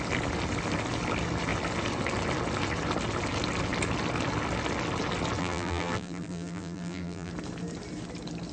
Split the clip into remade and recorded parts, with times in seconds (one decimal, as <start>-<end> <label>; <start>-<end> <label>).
0.0-5.4 recorded; 5.4-7.3 remade; 7.3-8.5 recorded